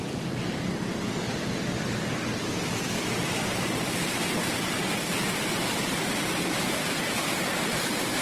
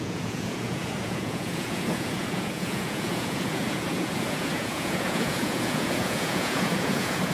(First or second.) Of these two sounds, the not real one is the second